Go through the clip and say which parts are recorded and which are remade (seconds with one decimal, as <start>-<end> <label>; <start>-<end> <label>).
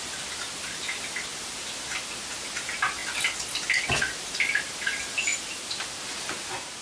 0.0-6.8 recorded